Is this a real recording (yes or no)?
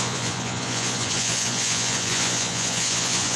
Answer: no